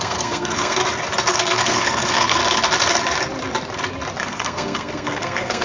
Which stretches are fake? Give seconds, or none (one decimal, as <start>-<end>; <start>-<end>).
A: 0.0-0.8; 1.3-2.4; 4.2-5.6